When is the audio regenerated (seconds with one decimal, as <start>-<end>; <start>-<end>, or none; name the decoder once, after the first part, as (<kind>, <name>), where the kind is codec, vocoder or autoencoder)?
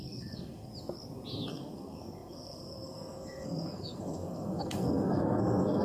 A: 0.0-0.7 (codec, SNAC); 1.5-5.8